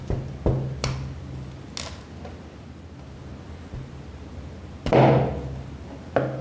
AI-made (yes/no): no